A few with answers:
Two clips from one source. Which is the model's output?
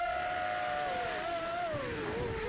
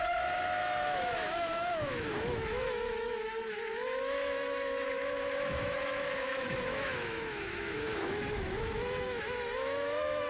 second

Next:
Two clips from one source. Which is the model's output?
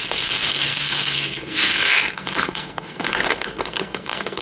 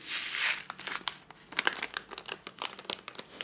first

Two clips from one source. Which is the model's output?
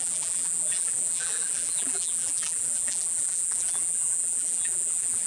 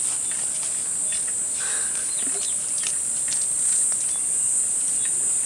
first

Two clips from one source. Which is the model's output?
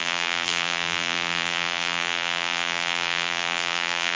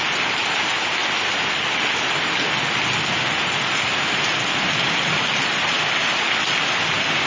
first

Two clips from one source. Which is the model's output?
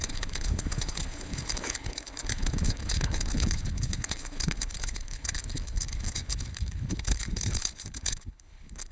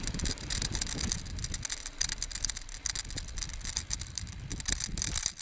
first